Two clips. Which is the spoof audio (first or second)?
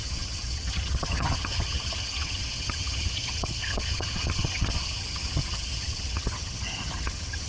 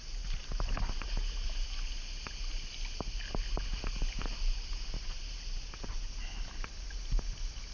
first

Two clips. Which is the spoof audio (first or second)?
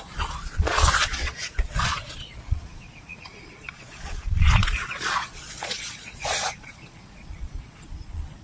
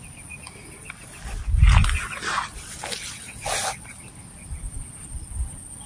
first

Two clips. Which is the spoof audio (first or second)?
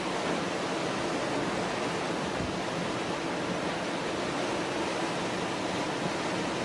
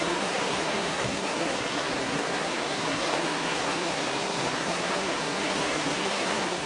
second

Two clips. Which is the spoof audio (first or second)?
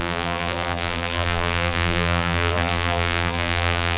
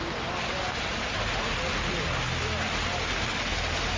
first